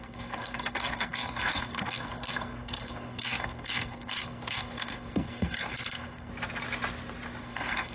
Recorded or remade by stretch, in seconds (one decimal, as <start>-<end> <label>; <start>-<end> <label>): 0.0-6.3 remade; 6.3-7.4 recorded; 7.4-7.9 remade